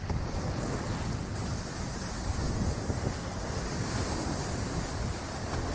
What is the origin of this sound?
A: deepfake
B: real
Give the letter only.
B